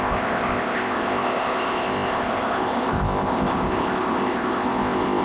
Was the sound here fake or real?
fake